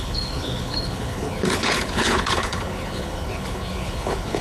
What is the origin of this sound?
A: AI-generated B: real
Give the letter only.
A